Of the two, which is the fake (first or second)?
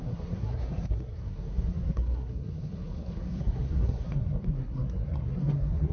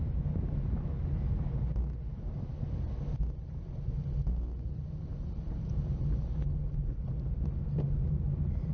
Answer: first